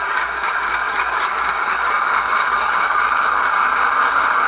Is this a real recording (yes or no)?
no